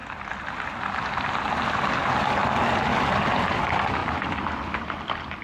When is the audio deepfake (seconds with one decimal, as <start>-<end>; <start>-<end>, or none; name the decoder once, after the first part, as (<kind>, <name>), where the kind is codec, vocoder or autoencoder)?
none